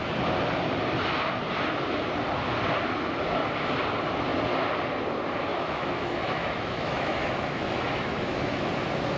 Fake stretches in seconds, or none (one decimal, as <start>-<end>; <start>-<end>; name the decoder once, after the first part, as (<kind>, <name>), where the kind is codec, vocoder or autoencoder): 5.5-8.7 (autoencoder, DAC-VAE)